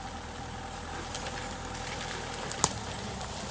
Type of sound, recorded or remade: recorded